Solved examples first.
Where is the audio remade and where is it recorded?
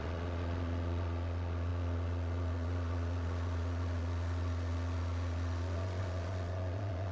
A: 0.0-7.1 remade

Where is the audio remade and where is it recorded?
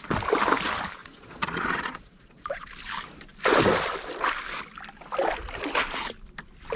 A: 0.0-1.0 recorded; 1.0-2.7 remade; 2.7-6.8 recorded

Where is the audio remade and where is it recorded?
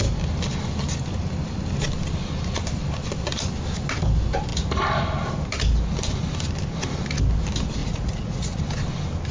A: 0.0-7.8 recorded; 7.8-8.6 remade; 8.6-9.3 recorded